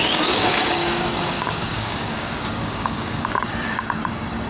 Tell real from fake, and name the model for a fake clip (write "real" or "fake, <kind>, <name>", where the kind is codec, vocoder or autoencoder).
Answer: fake, codec, DAC